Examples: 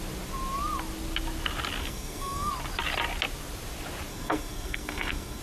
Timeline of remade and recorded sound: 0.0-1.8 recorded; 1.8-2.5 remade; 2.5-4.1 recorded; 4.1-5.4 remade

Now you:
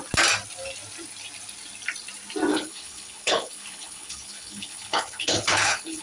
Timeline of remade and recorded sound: 0.0-2.5 recorded; 2.5-6.0 remade

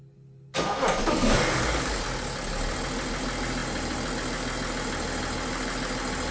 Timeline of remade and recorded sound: 0.0-1.0 recorded; 1.0-2.0 remade; 2.0-6.3 recorded

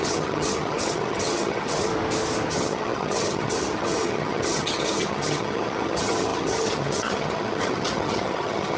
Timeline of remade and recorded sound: 0.0-1.9 remade; 1.9-2.5 recorded; 2.5-8.8 remade

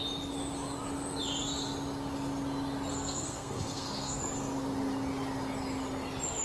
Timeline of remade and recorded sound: 0.0-2.9 recorded; 2.9-4.2 remade; 4.2-6.4 recorded

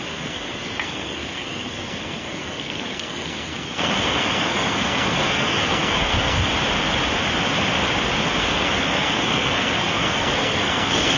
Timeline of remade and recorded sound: 0.0-6.5 remade; 6.5-8.4 recorded; 8.4-11.2 remade

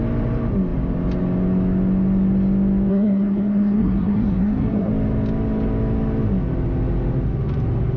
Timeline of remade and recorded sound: 0.0-2.9 recorded; 2.9-4.9 remade; 4.9-8.0 recorded